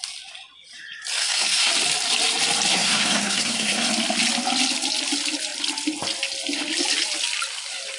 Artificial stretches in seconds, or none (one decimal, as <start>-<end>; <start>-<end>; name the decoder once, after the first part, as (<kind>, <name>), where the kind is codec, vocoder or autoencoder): 1.2-1.7 (codec, SNAC); 2.7-3.9